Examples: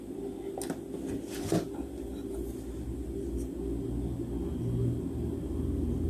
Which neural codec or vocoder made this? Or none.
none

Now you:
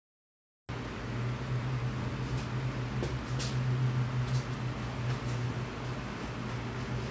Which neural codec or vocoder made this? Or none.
none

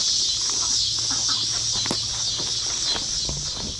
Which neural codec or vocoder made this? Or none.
none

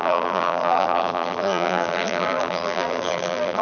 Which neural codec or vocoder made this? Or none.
vocoder, BigVGAN v2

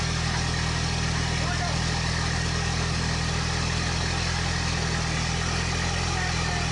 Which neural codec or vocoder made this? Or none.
none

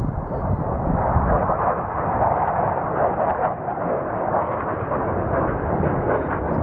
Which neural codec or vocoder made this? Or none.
none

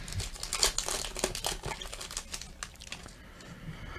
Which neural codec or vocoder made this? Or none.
none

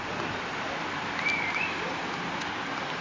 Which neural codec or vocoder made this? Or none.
vocoder, BigVGAN v2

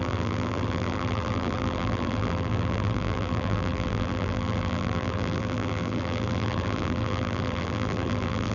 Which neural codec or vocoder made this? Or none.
vocoder, BigVGAN v2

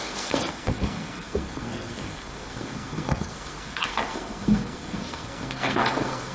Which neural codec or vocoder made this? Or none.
codec, SNAC